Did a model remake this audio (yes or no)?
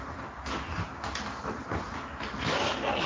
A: no